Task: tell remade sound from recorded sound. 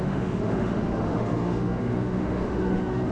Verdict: remade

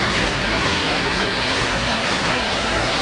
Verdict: remade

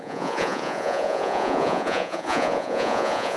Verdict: remade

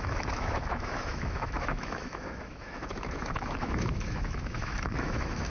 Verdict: remade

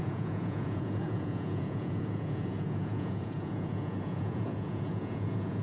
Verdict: remade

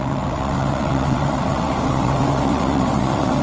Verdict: remade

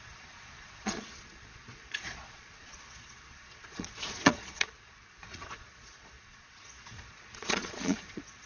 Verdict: remade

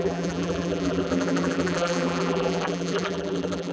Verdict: remade